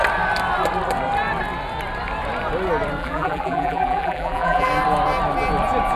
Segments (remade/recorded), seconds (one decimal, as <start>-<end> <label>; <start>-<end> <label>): 0.0-3.0 recorded; 3.0-4.7 remade; 4.7-6.0 recorded